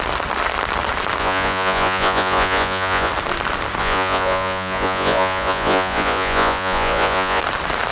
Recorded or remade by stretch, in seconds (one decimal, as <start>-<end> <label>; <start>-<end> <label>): 0.0-1.2 recorded; 1.2-3.1 remade; 3.1-3.8 recorded; 3.8-7.4 remade; 7.4-7.9 recorded